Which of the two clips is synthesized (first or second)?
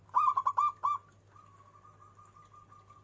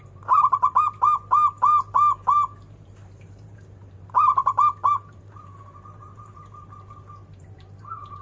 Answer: second